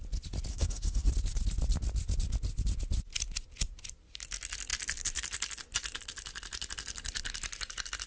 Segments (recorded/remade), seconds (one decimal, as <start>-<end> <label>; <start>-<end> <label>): 0.0-0.5 recorded; 0.5-1.1 remade; 1.1-8.1 recorded